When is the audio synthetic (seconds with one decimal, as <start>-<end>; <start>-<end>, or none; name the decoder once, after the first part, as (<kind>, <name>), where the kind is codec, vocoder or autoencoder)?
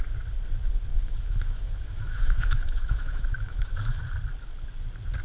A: 0.9-4.0 (autoencoder, DAC-VAE)